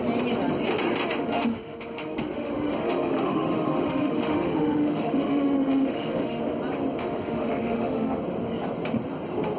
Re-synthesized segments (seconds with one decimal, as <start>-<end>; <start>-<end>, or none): 1.2-6.4; 7.0-8.2